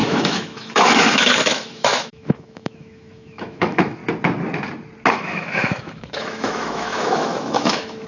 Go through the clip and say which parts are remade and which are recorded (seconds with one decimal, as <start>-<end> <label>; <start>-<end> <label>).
0.0-4.0 remade; 4.0-5.1 recorded; 5.1-8.1 remade